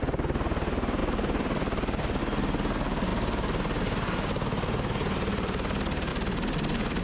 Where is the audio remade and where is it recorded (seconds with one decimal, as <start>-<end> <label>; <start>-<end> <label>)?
0.0-1.0 recorded; 1.0-2.2 remade; 2.2-6.1 recorded; 6.1-7.0 remade